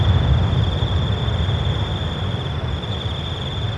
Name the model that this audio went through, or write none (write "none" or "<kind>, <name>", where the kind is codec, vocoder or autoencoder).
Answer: none